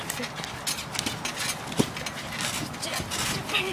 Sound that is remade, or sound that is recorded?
recorded